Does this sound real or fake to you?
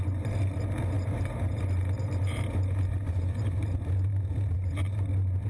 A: fake